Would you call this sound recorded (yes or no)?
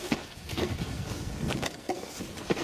no